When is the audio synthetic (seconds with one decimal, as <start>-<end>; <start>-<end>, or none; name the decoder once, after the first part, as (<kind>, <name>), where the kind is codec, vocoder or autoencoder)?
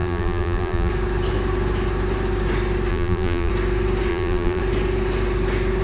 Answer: 0.0-0.9 (vocoder, BigVGAN v2); 2.9-3.5; 4.1-4.6